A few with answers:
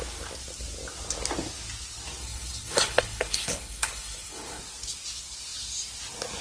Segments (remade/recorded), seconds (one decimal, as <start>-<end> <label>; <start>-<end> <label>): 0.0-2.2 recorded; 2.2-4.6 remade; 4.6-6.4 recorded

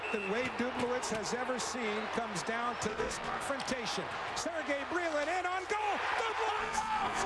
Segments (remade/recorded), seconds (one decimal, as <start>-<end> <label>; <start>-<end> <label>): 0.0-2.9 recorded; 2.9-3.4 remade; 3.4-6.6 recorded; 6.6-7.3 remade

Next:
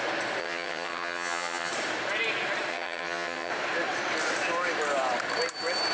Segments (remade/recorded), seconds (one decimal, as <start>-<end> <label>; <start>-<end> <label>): 0.0-0.4 recorded; 0.4-1.7 remade; 1.7-2.7 recorded; 2.7-3.5 remade; 3.5-5.9 recorded

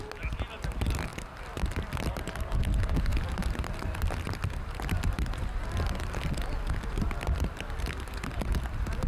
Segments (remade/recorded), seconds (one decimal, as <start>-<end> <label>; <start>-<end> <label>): 0.0-9.1 recorded

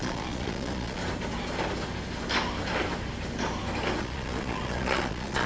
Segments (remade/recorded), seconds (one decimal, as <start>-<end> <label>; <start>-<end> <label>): 0.0-1.0 remade; 1.0-4.0 recorded; 4.0-5.5 remade